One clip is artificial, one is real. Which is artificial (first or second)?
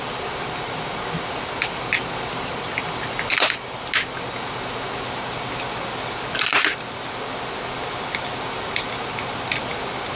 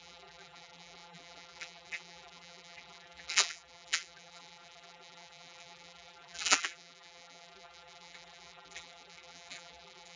second